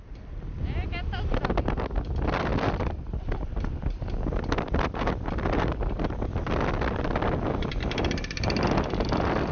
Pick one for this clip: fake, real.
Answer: fake